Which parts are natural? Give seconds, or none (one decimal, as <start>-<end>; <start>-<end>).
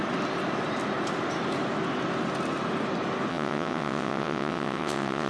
0.0-3.3